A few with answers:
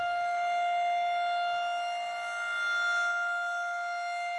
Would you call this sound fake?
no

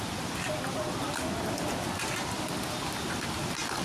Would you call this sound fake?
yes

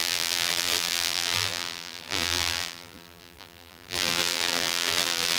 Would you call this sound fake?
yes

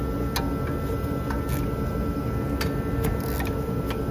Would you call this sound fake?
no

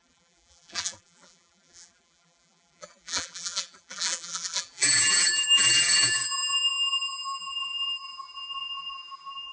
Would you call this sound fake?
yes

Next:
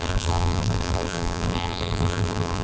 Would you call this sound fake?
yes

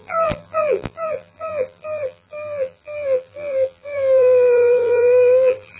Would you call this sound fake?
yes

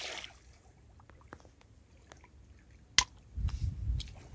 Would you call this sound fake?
no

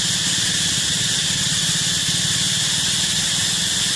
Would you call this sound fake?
no